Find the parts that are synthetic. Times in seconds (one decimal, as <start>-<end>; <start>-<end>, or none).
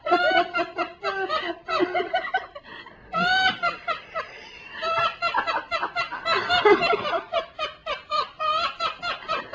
none